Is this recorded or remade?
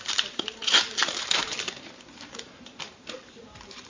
remade